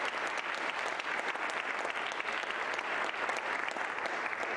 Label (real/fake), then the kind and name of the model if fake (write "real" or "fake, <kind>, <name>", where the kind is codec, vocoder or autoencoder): real